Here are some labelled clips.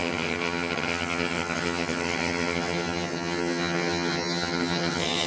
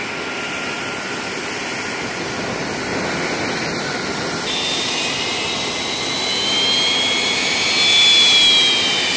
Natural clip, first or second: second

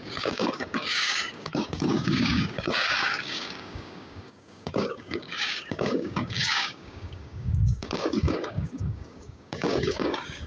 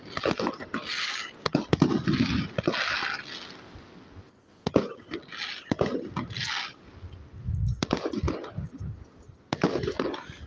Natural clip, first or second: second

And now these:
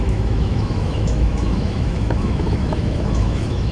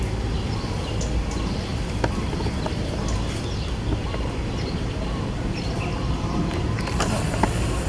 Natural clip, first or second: second